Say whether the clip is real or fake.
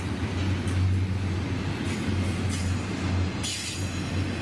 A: real